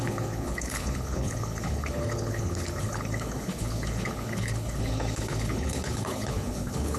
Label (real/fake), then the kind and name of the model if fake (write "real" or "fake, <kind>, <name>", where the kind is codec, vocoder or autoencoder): fake, codec, HILCodec